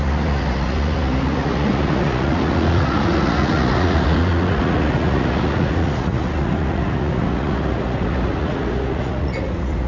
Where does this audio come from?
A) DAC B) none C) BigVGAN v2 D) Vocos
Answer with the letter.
D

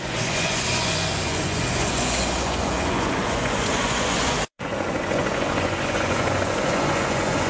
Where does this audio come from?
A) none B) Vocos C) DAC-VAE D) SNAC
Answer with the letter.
B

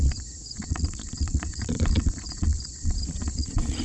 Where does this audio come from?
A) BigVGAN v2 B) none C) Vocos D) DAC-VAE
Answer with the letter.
C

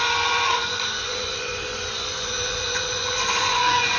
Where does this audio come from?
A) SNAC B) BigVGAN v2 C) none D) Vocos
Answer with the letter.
D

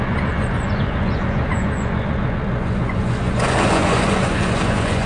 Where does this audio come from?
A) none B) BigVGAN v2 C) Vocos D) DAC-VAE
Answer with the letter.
C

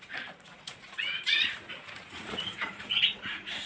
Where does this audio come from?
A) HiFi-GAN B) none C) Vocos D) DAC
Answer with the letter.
C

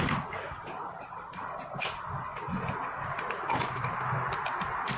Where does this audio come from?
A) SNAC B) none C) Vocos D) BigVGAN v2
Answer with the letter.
B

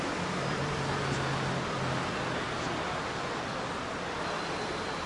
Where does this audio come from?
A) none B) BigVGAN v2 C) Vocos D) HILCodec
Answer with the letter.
A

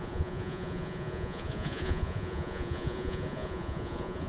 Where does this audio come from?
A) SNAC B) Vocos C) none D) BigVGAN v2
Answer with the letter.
B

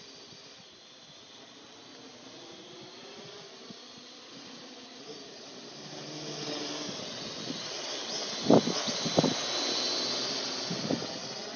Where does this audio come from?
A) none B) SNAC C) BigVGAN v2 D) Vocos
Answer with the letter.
A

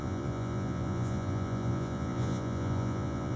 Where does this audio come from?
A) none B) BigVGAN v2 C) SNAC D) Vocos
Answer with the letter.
D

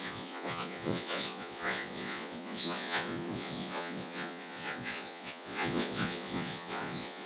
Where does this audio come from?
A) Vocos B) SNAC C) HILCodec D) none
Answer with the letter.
A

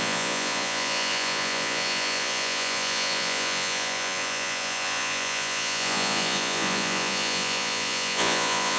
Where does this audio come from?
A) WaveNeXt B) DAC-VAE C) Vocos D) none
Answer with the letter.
C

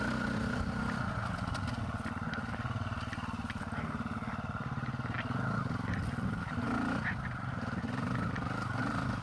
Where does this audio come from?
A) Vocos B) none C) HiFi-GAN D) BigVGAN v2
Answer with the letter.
B